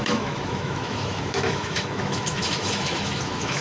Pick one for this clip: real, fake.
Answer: fake